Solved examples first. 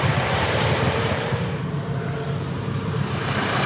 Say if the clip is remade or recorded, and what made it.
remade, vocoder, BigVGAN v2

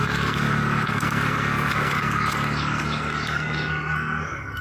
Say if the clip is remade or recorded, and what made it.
remade, codec, SNAC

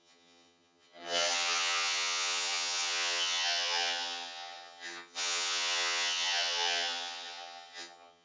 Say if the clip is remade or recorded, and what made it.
remade, vocoder, HiFi-GAN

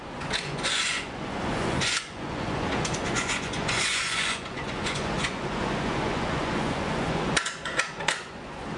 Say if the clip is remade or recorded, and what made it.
remade, vocoder, Vocos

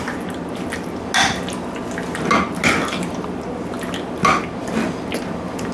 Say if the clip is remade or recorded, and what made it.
recorded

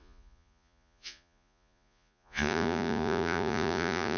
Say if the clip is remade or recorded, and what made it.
remade, vocoder, Vocos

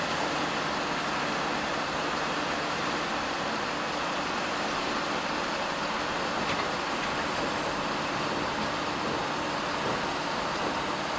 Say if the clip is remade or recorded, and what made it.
recorded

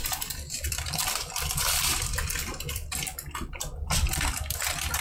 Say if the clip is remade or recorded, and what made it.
remade, vocoder, BigVGAN v2